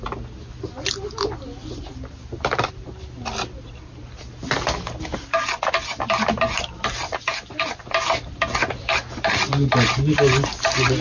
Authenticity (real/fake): real